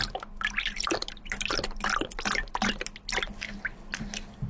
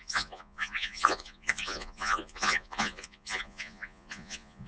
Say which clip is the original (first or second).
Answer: first